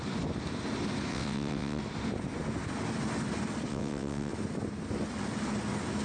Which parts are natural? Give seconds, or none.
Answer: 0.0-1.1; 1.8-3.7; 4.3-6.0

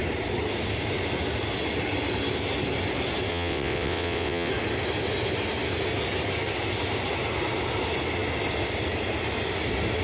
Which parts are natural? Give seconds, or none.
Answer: 0.0-3.3; 4.5-10.0

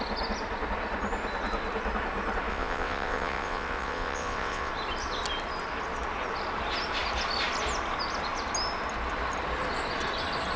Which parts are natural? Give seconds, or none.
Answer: 0.0-2.5; 4.7-10.6